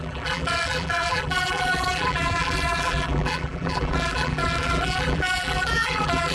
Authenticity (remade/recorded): remade